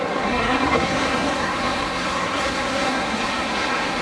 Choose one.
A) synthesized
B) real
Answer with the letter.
A